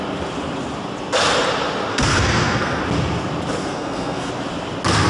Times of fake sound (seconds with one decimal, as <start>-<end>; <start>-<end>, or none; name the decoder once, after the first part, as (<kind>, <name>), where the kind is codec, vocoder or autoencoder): 1.9-2.8 (codec, SNAC); 3.6-4.3